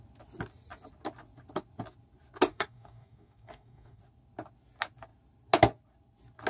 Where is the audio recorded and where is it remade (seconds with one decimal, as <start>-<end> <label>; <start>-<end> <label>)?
0.0-2.5 recorded; 2.5-4.0 remade; 4.0-6.5 recorded